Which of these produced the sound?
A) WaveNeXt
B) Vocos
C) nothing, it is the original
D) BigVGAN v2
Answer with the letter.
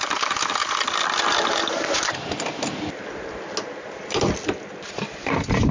C